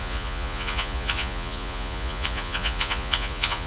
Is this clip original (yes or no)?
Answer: no